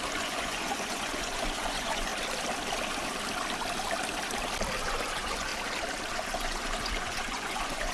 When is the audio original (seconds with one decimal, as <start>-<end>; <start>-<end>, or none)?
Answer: 2.1-4.8; 5.5-6.1